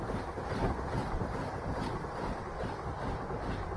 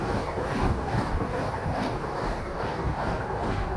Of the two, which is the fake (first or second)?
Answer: second